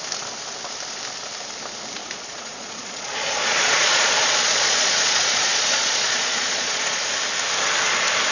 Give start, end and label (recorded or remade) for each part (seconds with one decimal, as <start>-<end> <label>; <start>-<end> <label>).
0.0-2.0 recorded; 2.0-7.0 remade; 7.0-8.3 recorded